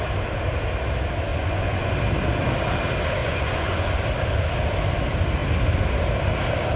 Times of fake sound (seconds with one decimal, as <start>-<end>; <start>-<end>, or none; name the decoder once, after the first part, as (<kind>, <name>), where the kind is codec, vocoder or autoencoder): 1.3-1.9 (vocoder, Vocos); 3.2-4.0

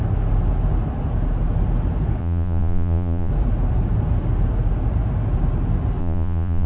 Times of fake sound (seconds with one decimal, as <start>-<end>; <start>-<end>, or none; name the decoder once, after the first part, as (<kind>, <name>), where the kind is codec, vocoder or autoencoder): 2.2-3.3 (vocoder, Vocos); 6.0-6.7

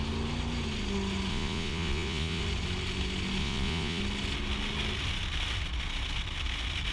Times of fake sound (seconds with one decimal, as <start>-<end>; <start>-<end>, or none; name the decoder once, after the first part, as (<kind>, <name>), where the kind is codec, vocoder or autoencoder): 1.3-2.4 (vocoder, Vocos); 3.4-4.0

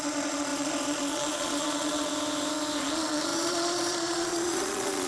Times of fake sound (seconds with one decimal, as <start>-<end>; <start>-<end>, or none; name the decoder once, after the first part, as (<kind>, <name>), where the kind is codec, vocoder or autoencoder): 0.0-2.1 (vocoder, Vocos); 2.8-5.1

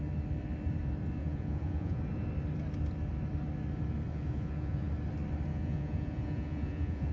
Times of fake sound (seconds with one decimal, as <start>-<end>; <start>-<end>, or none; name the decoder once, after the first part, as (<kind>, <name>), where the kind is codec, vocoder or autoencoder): 1.2-2.0 (vocoder, Vocos); 4.1-4.9; 5.5-7.1